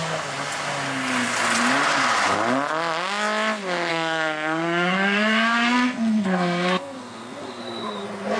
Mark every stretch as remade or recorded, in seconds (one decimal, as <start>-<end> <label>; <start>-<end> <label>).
0.0-3.9 recorded; 3.9-7.6 remade; 7.6-8.4 recorded